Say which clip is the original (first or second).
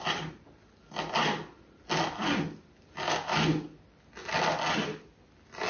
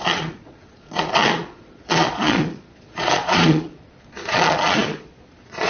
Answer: first